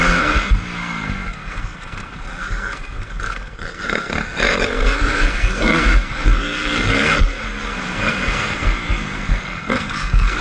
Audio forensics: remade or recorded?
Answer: remade